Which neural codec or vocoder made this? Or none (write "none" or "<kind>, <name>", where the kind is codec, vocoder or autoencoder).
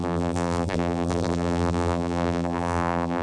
vocoder, BigVGAN v2